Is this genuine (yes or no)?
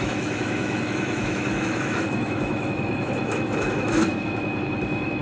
no